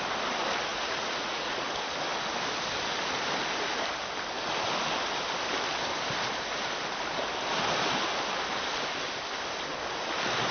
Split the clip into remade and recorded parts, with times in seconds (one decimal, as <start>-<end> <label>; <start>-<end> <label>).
0.0-0.7 recorded; 0.7-1.7 remade; 1.7-10.5 recorded